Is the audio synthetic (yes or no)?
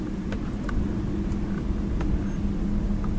no